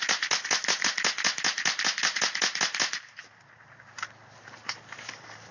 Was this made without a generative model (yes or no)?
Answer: yes